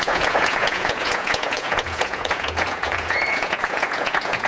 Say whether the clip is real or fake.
fake